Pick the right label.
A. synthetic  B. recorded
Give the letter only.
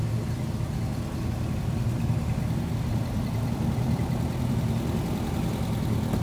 B